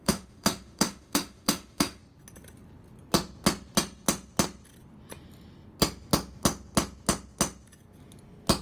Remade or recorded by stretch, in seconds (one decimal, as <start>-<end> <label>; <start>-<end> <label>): 0.0-2.0 remade; 2.0-8.6 recorded